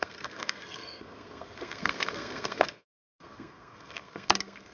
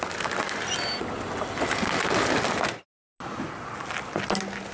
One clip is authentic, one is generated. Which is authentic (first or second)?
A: second